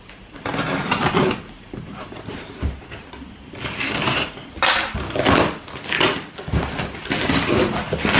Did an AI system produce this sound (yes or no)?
no